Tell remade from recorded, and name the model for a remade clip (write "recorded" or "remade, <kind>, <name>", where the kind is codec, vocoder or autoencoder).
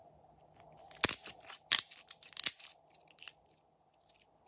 recorded